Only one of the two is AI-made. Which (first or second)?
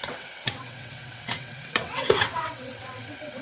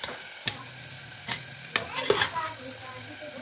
first